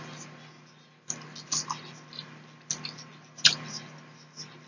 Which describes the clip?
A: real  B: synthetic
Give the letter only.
A